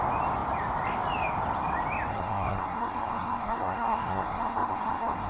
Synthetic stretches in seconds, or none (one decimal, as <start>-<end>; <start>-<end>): 2.1-5.3